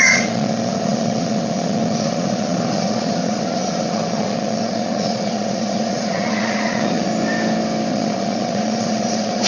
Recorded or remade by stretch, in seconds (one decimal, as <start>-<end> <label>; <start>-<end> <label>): 0.0-7.1 remade; 7.1-7.9 recorded; 7.9-9.5 remade